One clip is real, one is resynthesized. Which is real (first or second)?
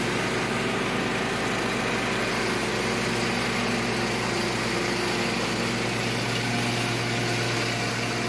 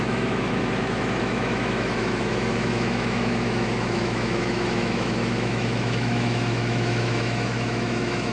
first